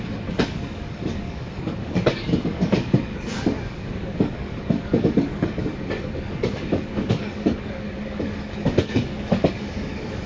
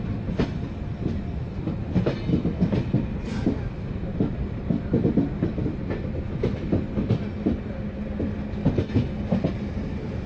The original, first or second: second